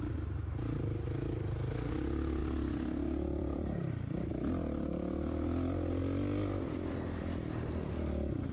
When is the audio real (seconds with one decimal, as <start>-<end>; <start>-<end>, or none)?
0.0-2.4; 3.9-8.5